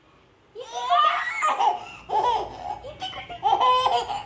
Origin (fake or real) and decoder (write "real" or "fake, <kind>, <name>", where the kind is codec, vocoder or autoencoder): real